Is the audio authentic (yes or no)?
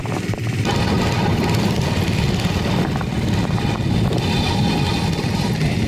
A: yes